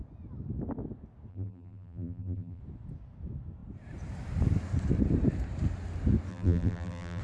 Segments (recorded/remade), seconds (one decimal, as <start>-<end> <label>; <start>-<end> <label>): 0.0-1.3 recorded; 1.3-2.6 remade; 2.6-6.3 recorded; 6.3-7.2 remade